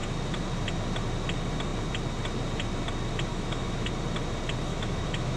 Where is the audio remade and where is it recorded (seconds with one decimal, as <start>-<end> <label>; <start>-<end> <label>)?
0.0-3.3 recorded; 3.3-3.9 remade; 3.9-4.7 recorded; 4.7-5.4 remade